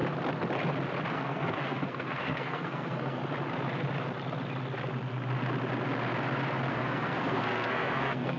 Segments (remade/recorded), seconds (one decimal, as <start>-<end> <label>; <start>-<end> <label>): 0.0-1.1 recorded; 1.1-3.2 remade; 3.2-6.7 recorded; 6.7-8.4 remade